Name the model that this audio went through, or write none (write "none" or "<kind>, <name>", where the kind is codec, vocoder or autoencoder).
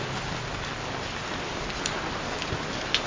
none